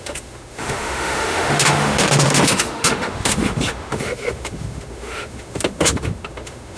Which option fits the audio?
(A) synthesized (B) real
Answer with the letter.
A